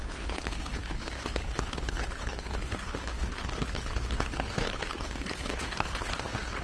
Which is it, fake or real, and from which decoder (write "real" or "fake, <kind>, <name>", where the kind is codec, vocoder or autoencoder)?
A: fake, codec, HILCodec